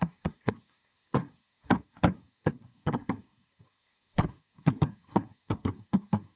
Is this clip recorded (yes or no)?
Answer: no